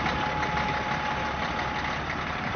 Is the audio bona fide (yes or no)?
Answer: yes